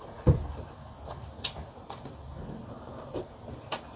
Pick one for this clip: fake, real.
real